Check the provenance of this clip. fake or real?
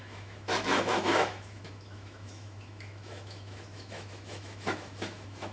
fake